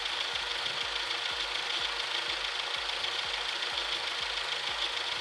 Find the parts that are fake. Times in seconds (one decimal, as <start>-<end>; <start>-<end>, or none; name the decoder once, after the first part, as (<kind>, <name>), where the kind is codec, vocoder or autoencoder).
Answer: none